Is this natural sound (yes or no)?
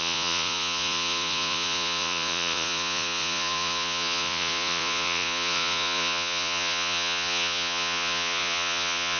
no